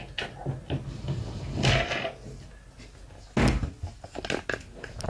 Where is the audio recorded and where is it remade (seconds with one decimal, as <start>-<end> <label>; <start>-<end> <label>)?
0.0-5.1 recorded